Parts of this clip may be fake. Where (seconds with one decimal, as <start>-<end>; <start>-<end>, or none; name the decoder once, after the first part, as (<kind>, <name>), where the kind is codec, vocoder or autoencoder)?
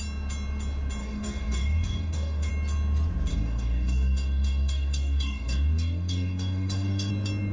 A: 1.0-2.5 (codec, DAC); 3.3-7.1